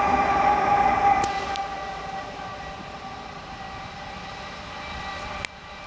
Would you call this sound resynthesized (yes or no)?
no